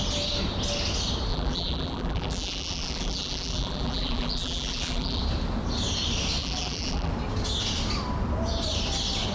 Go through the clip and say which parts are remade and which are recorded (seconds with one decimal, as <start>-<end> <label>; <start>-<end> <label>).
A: 0.0-1.3 recorded; 1.3-5.2 remade; 5.2-6.4 recorded; 6.4-7.1 remade; 7.1-9.3 recorded